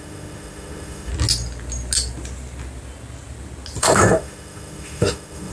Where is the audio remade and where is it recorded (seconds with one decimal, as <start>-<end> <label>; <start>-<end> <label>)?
0.0-1.1 remade; 1.1-3.8 recorded; 3.8-5.5 remade